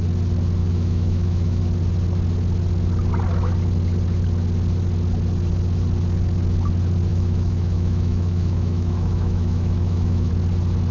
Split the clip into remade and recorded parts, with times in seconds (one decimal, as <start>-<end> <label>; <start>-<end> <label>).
0.0-0.6 recorded; 0.6-1.6 remade; 1.6-7.1 recorded; 7.1-10.3 remade; 10.3-10.9 recorded